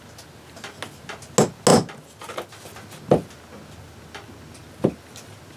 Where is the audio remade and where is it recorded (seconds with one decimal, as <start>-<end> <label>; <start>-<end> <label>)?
0.0-5.6 recorded